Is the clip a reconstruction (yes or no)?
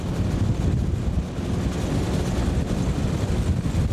no